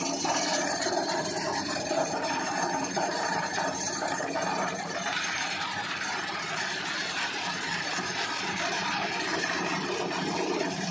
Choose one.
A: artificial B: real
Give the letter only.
A